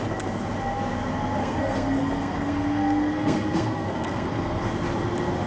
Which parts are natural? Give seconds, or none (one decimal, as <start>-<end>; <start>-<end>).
0.0-1.4; 4.7-5.5